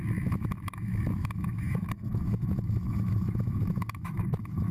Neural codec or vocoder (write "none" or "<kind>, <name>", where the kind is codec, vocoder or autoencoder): autoencoder, DAC-VAE